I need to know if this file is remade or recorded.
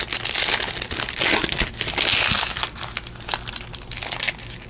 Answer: recorded